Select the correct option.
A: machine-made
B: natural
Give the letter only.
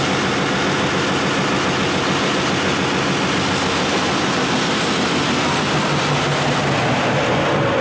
B